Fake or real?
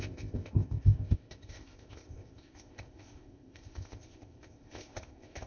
fake